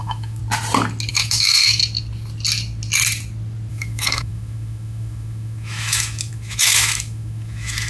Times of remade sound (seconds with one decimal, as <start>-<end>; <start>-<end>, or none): 0.0-0.4; 1.1-1.8; 3.7-7.9